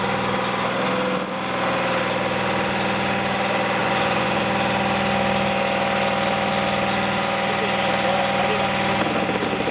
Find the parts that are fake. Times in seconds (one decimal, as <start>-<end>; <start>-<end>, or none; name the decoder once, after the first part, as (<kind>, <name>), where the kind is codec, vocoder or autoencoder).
3.8-4.4 (vocoder, Vocos)